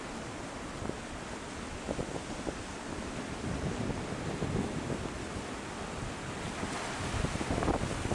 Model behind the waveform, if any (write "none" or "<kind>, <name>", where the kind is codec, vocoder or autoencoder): none